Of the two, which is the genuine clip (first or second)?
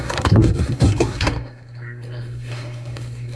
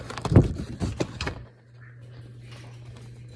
second